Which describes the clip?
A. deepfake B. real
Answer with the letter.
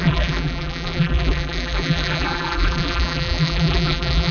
A